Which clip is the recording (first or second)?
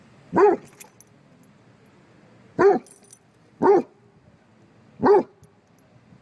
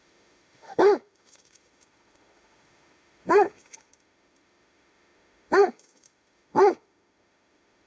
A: first